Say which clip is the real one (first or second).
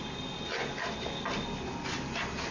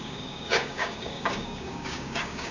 first